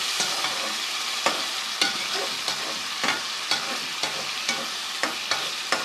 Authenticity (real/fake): real